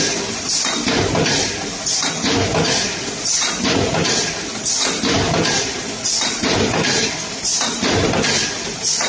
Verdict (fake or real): real